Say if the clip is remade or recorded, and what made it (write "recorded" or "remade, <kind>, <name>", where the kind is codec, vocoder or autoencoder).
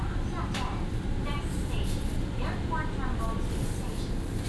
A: recorded